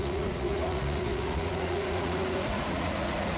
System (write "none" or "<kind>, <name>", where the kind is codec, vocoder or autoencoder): vocoder, Vocos